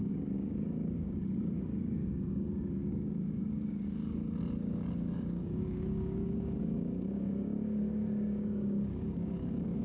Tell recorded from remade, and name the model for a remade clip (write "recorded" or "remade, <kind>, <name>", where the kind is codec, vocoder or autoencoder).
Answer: remade, codec, DAC